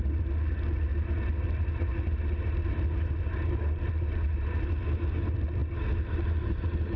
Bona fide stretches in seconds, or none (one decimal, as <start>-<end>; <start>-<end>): 0.0-7.0